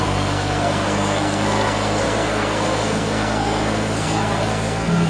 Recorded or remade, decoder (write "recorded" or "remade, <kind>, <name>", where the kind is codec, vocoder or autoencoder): remade, codec, SNAC